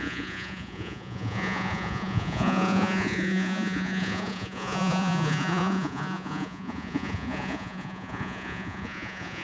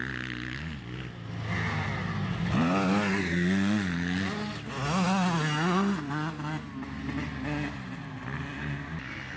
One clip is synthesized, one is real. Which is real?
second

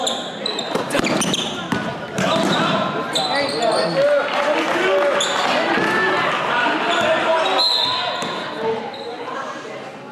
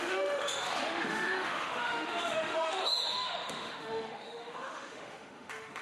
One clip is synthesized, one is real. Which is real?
first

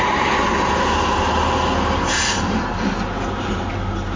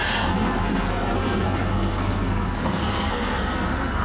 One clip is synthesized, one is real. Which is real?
first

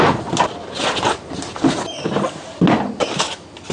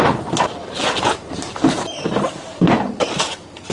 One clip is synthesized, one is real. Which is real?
first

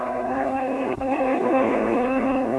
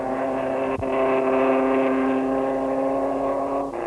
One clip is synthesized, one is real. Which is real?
second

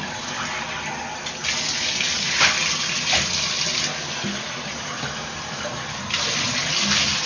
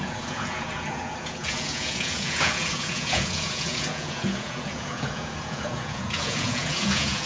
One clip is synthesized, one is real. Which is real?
first